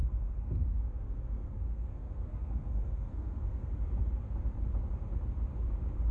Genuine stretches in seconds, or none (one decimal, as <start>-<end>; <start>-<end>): 3.7-6.1